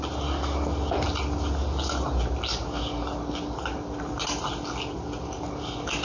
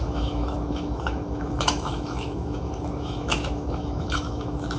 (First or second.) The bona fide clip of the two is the first